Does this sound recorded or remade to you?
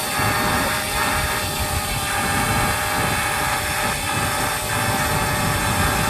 recorded